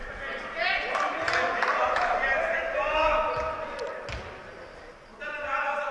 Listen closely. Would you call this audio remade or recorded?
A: recorded